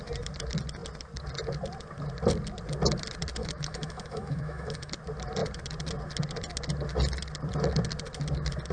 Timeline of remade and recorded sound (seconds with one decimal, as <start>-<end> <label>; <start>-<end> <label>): 0.0-3.4 recorded; 3.4-4.9 remade; 4.9-8.7 recorded